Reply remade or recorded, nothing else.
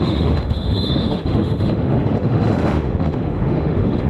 remade